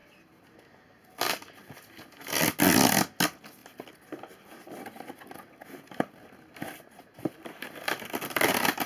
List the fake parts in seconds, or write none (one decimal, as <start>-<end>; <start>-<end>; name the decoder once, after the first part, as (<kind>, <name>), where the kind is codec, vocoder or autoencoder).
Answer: none